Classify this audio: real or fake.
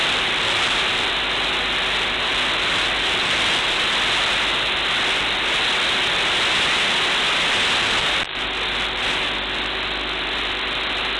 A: real